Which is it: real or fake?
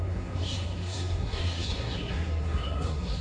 fake